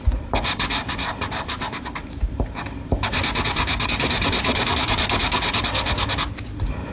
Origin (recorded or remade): remade